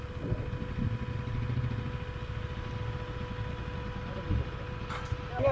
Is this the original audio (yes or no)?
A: yes